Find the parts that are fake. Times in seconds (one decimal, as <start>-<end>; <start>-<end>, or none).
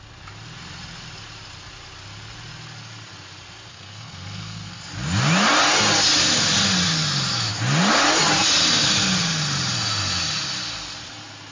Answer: 3.7-4.8